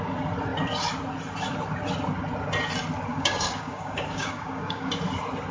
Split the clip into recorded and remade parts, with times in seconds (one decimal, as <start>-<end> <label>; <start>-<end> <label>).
0.0-3.1 recorded; 3.1-4.9 remade; 4.9-5.5 recorded